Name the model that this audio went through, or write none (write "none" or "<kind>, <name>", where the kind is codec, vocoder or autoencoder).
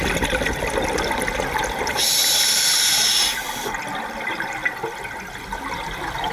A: none